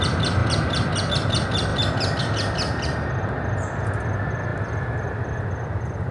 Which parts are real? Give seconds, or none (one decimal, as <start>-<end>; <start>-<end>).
0.0-6.1